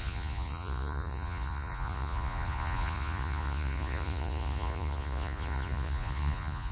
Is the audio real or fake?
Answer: fake